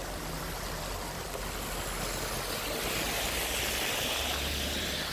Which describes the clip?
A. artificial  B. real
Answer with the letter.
B